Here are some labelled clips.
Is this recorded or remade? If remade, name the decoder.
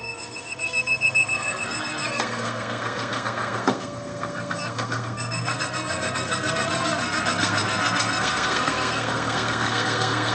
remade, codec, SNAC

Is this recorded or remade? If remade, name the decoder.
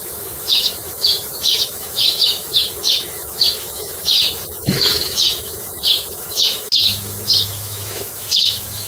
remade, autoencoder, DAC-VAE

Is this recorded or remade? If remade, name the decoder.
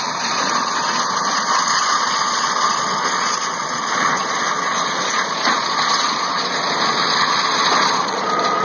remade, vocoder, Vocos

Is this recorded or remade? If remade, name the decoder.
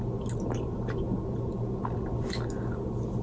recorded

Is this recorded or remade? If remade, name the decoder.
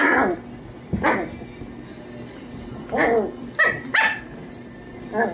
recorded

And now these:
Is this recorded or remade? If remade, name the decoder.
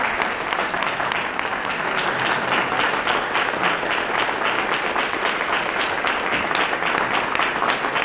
recorded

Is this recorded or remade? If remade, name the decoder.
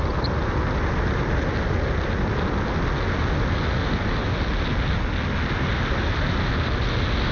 recorded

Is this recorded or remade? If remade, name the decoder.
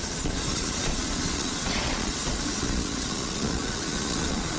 remade, vocoder, Vocos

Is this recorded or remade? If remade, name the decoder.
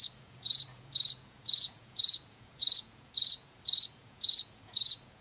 remade, vocoder, Vocos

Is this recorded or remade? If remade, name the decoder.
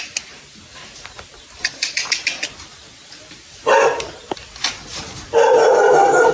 recorded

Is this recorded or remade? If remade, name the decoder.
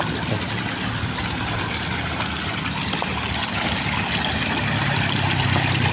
recorded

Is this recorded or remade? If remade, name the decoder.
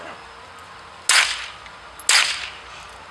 recorded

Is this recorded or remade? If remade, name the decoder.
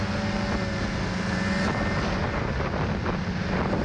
recorded